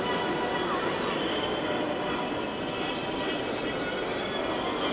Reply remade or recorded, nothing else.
recorded